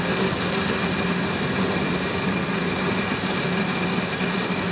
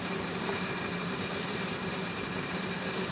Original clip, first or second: first